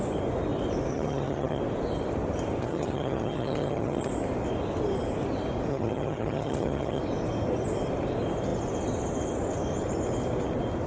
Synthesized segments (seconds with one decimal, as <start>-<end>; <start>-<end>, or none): 0.9-1.6; 2.6-4.1; 5.7-7.0